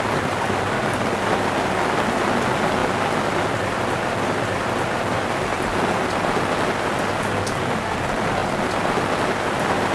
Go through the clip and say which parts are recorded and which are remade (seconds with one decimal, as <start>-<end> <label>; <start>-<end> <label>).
0.0-9.9 recorded